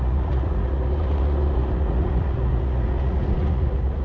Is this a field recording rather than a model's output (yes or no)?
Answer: no